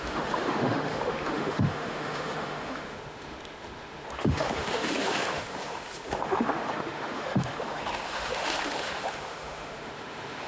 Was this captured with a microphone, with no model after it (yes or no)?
no